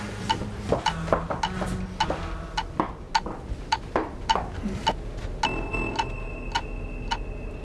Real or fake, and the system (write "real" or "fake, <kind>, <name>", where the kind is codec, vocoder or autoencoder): real